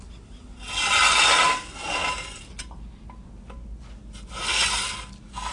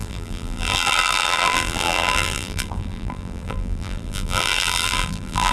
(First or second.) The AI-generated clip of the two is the second